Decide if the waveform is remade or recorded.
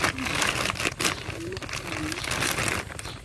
recorded